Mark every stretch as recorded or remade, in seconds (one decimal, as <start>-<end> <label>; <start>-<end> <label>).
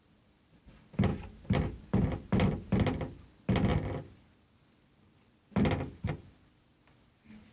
0.0-7.5 recorded